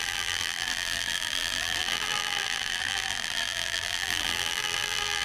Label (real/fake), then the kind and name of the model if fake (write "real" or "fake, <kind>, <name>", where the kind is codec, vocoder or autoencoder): fake, vocoder, BigVGAN v2